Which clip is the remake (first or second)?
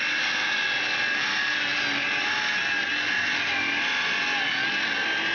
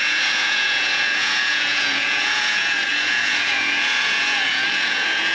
second